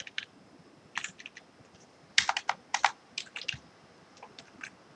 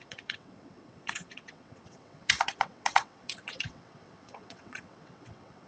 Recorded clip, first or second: first